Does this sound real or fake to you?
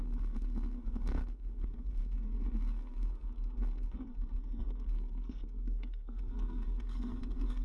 fake